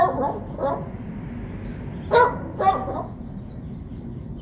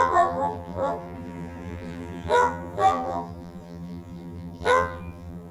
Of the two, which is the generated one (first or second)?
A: second